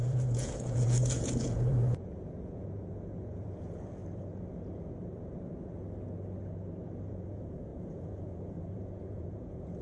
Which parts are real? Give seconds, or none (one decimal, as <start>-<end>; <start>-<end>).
4.0-7.1